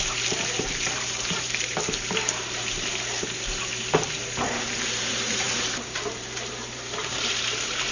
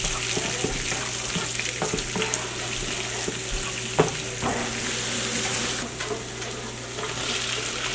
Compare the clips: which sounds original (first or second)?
second